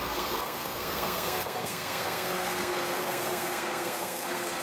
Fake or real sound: fake